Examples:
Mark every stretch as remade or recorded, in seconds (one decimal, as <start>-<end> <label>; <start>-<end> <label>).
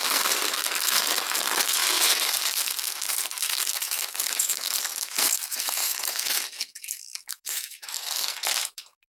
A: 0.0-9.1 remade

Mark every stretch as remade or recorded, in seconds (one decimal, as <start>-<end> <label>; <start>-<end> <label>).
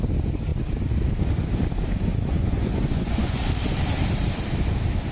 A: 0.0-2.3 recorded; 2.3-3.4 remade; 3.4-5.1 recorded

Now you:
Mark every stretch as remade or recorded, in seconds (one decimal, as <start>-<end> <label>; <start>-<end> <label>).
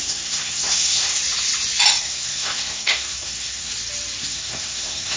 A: 0.0-1.2 remade; 1.2-2.0 recorded; 2.0-3.7 remade; 3.7-4.2 recorded; 4.2-5.2 remade